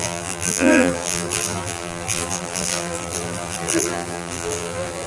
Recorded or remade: remade